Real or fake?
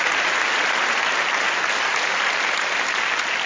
real